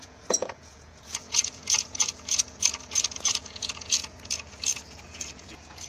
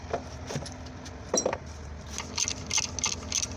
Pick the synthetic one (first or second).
first